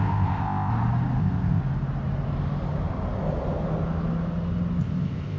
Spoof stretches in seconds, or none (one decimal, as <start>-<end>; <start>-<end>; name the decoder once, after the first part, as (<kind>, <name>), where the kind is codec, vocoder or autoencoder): 0.0-0.7 (codec, ZipCodec); 1.2-1.6; 4.8-5.4